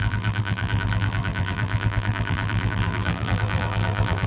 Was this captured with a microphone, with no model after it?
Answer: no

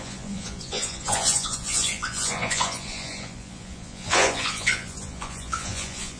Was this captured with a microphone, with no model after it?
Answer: no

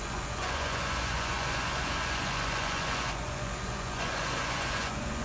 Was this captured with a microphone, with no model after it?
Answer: no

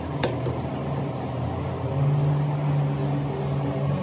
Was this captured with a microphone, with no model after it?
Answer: yes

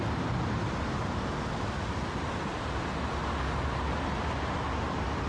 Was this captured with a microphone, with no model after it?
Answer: yes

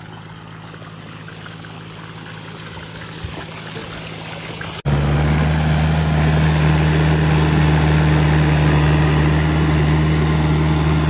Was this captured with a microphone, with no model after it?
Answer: yes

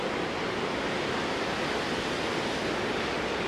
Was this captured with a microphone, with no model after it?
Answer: yes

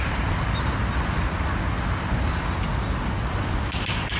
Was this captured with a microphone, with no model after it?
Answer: yes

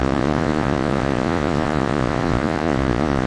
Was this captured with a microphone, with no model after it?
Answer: no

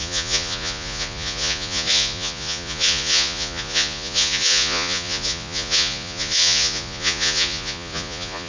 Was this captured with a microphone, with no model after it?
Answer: no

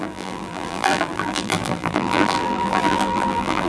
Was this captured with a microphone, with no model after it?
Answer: no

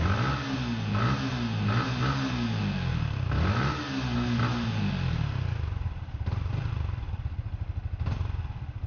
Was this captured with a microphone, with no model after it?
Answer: yes